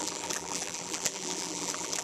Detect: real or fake fake